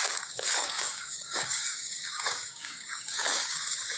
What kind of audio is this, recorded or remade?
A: remade